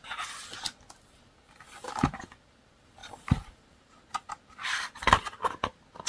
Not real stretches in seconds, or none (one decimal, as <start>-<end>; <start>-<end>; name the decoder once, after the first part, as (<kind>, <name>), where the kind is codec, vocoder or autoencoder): 3.0-4.3 (vocoder, BigVGAN v2)